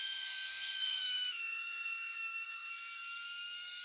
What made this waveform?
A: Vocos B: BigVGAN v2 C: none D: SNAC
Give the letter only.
D